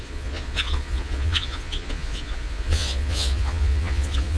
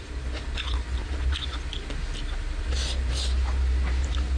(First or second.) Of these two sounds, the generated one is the first